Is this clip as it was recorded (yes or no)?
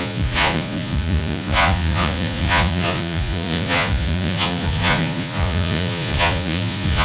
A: no